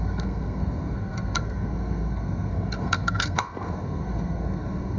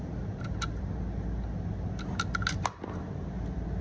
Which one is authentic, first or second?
second